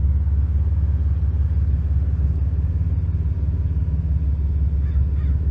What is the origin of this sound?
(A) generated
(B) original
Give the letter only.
B